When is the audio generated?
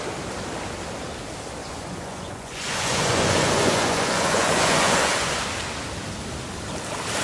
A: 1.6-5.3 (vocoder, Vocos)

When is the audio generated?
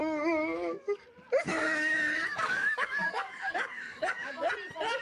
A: 0.0-1.0 (codec, DAC); 1.5-4.5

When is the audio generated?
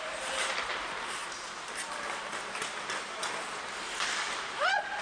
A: none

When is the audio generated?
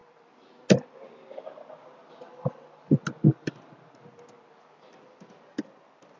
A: none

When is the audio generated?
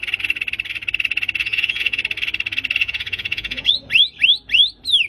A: 1.4-2.0 (vocoder, Vocos); 2.8-3.8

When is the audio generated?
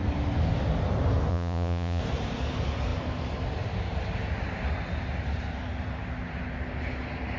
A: 1.3-2.0 (vocoder, Vocos)